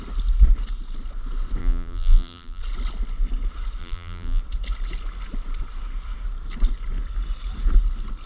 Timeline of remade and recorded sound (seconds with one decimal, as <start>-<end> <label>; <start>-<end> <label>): 0.0-1.6 recorded; 1.6-2.6 remade; 2.6-3.8 recorded; 3.8-4.4 remade; 4.4-8.3 recorded